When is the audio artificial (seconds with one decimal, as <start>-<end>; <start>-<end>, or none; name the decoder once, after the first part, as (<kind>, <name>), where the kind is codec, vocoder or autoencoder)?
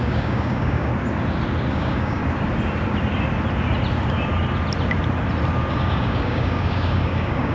0.0-0.9 (codec, DAC); 1.7-2.2; 5.7-7.5